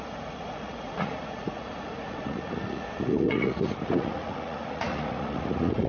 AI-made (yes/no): yes